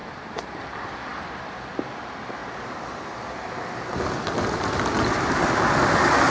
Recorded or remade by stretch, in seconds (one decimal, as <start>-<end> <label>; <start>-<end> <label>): 0.0-0.6 remade; 0.6-1.1 recorded; 1.1-1.7 remade; 1.7-6.3 recorded